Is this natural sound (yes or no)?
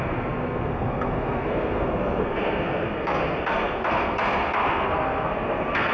no